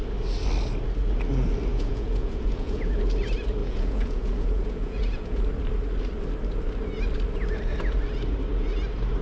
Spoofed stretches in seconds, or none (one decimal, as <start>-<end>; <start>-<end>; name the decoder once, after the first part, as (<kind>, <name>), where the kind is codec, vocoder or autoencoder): 1.7-2.9 (vocoder, Vocos); 3.6-5.4